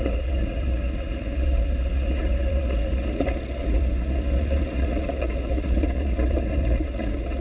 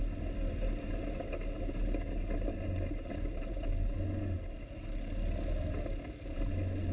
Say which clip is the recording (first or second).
second